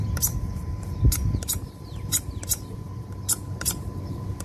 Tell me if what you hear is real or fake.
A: fake